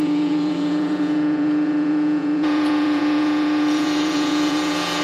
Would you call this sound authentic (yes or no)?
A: no